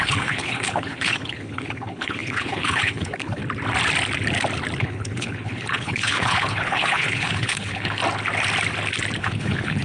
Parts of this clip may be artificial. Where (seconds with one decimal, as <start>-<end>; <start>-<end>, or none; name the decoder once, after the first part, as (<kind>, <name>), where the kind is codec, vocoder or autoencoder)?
0.0-3.4 (codec, HILCodec); 4.8-8.0; 9.2-9.8